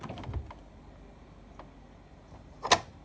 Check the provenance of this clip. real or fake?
real